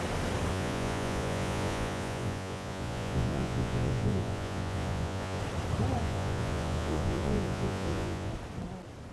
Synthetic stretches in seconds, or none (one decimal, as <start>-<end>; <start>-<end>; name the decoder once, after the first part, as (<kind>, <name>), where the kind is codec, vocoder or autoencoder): 0.5-5.4 (vocoder, Vocos); 6.0-8.3